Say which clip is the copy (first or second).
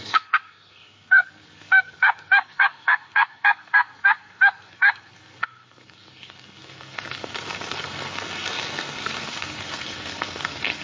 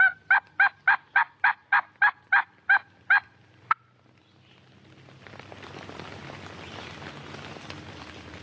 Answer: first